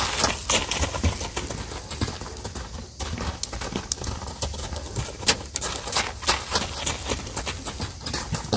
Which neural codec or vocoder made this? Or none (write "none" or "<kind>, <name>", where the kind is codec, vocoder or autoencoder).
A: none